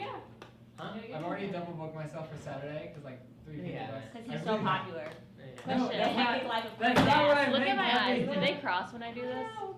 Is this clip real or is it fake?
real